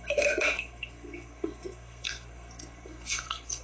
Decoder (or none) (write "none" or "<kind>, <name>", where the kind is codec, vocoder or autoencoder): codec, SNAC